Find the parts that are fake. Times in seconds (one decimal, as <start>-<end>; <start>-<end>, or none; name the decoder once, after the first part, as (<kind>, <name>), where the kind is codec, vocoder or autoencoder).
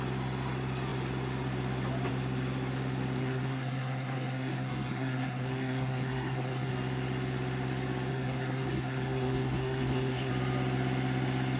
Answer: 3.2-6.7 (codec, SNAC); 8.1-10.3